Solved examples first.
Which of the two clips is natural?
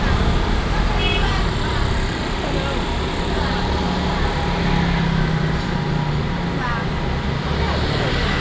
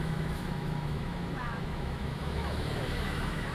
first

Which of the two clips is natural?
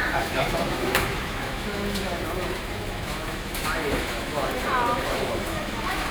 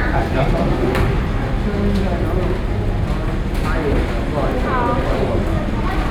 second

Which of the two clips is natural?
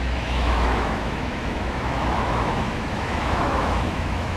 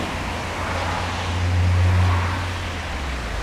second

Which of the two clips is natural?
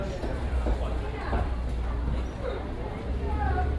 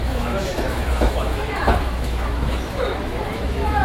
first